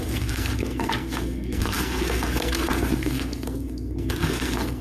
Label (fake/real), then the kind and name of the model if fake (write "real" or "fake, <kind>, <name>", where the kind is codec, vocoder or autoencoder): fake, codec, SNAC